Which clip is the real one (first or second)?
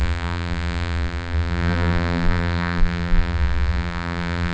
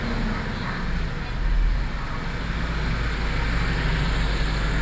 second